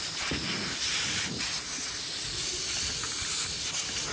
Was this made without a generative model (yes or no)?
yes